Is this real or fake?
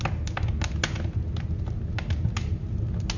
real